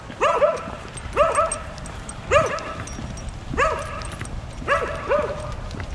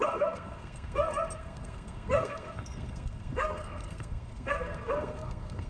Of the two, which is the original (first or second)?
first